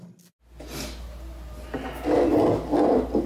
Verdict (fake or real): real